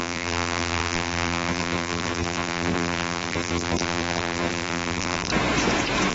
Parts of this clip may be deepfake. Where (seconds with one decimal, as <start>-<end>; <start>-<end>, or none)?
0.0-5.3